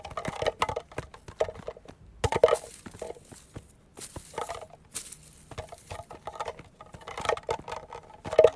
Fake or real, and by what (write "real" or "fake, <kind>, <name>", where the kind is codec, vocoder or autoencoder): real